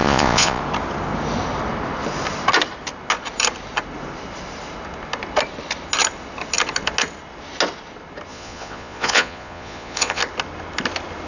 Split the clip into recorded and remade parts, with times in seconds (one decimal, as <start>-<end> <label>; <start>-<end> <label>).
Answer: 0.0-0.6 remade; 0.6-8.3 recorded; 8.3-10.2 remade; 10.2-11.3 recorded